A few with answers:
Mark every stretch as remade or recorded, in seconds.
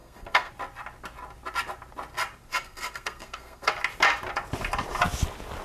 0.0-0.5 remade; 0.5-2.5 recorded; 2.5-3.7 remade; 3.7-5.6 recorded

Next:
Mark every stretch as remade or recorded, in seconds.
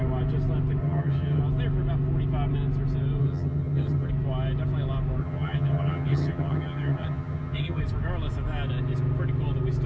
0.0-0.8 recorded; 0.8-1.4 remade; 1.4-3.2 recorded; 3.2-4.1 remade; 4.1-5.2 recorded; 5.2-7.8 remade; 7.8-9.9 recorded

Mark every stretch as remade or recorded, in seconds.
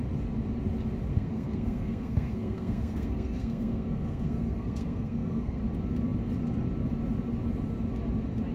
0.0-1.1 recorded; 1.1-5.6 remade; 5.6-8.5 recorded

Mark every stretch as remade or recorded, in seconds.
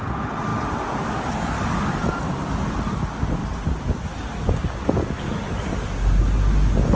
0.0-7.0 recorded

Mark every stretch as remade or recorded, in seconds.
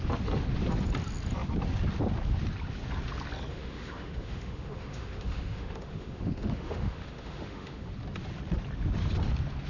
0.0-3.5 recorded; 3.5-7.9 remade; 7.9-9.7 recorded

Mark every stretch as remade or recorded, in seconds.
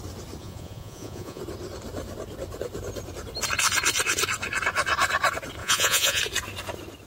0.0-0.4 recorded; 0.4-1.4 remade; 1.4-5.6 recorded; 5.6-6.2 remade; 6.2-7.1 recorded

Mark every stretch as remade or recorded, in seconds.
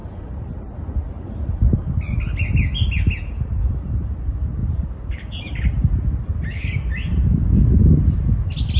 0.0-4.6 recorded; 4.6-5.9 remade; 5.9-8.8 recorded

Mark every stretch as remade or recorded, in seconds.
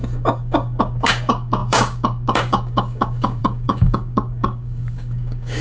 0.0-5.6 remade